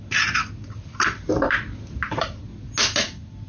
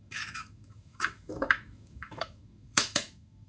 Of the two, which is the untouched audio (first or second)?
first